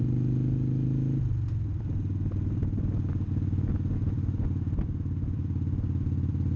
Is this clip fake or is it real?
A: real